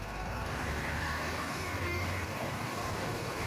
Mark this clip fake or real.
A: fake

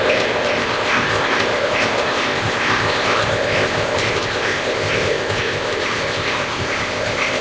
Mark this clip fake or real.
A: fake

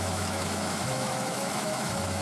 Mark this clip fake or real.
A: fake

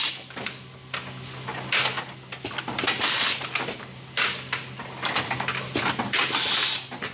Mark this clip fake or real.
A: real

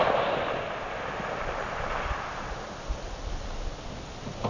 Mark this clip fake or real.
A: real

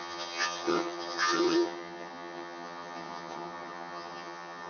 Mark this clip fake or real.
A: fake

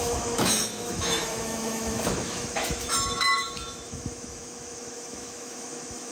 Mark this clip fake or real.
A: fake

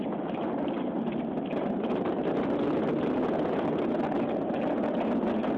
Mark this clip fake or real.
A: real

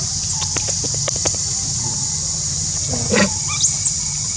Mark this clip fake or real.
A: real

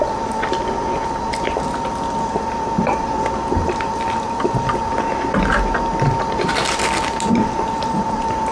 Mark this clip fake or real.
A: real